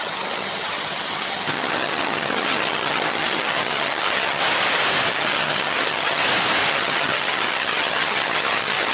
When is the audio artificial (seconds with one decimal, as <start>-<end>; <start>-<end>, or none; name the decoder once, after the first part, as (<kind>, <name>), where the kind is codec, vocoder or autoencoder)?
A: 0.0-4.4 (vocoder, HiFi-GAN); 5.1-6.2; 6.7-8.9